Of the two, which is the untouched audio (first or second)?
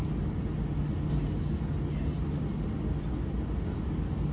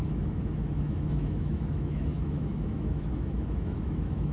first